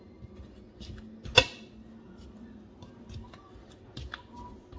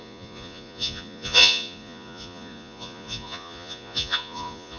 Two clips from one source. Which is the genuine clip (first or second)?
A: first